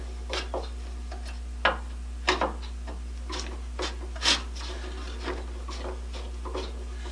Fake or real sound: real